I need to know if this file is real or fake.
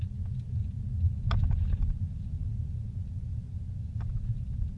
real